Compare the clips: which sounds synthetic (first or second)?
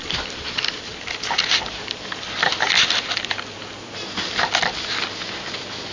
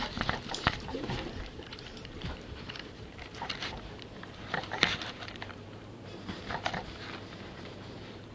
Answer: second